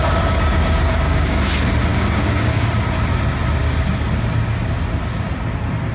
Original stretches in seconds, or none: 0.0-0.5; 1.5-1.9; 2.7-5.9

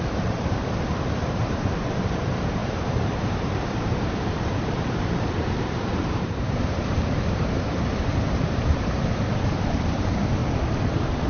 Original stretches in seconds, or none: 10.4-10.9

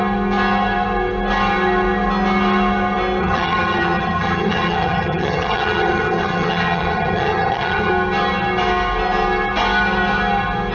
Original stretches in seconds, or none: 0.0-3.2; 7.9-10.7

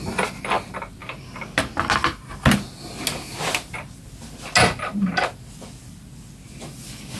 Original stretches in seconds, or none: 0.0-7.2

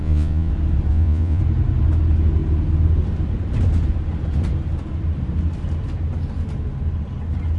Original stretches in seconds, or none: 0.5-0.9; 1.4-7.6

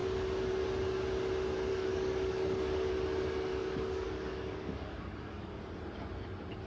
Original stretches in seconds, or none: 0.0-1.7; 2.9-3.5; 5.6-6.7

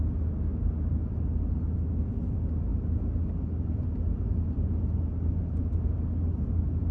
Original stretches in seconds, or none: 0.0-6.9

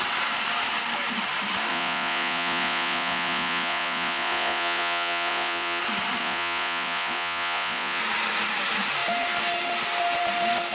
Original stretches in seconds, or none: 0.0-1.7; 5.8-6.2; 8.0-10.7